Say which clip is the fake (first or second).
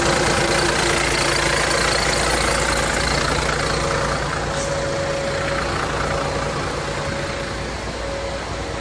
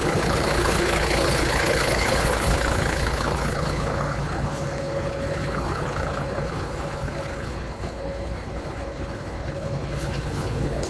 second